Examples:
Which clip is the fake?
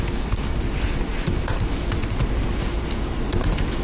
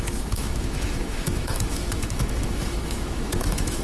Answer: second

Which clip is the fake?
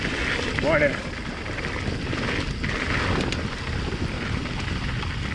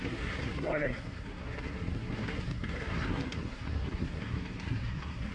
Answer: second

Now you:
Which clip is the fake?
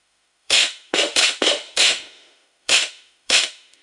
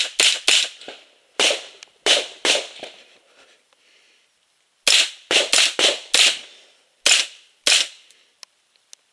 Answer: first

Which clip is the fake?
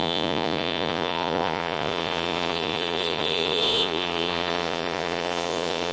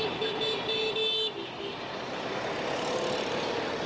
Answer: first